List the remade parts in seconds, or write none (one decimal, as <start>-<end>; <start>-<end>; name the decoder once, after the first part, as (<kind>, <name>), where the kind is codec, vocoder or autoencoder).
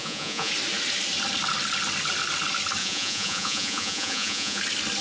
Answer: 0.0-0.5 (vocoder, Vocos); 2.8-4.6